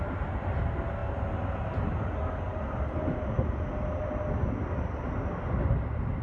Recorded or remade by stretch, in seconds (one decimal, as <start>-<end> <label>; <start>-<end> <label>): 0.0-6.2 recorded